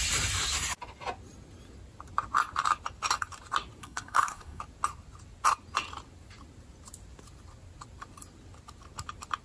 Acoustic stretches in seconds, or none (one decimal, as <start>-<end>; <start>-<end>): 0.0-3.8; 4.6-9.4